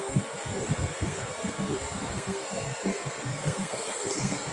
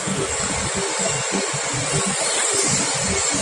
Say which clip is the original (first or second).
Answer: second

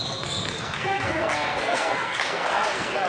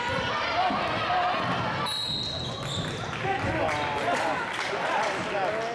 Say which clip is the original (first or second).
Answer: second